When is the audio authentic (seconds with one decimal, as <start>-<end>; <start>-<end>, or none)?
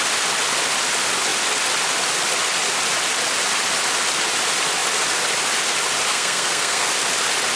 0.0-6.1; 6.9-7.6